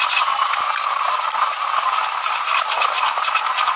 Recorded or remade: recorded